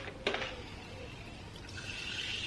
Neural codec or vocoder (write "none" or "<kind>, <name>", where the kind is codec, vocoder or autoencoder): none